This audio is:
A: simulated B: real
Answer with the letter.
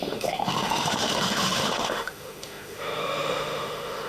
A